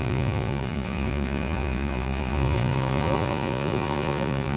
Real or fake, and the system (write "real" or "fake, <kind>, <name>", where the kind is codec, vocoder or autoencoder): fake, vocoder, Vocos